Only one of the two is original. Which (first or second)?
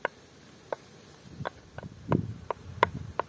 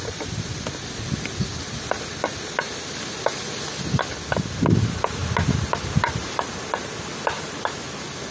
second